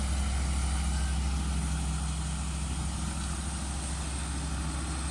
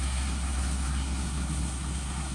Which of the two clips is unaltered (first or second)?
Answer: first